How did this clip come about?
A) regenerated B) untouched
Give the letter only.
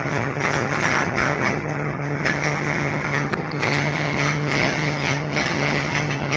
A